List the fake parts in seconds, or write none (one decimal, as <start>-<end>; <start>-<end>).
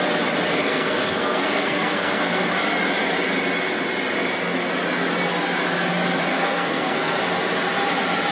0.7-2.5; 6.3-7.2